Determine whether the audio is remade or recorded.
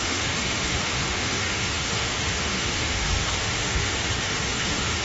remade